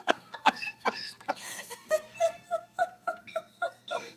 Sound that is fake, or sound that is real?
fake